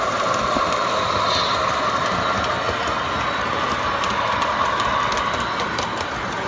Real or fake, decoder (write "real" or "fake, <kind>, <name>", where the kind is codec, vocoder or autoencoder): real